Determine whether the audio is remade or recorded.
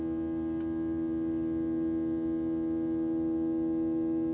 recorded